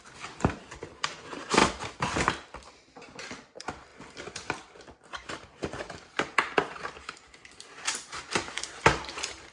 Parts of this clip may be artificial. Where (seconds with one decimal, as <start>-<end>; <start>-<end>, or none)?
0.0-9.5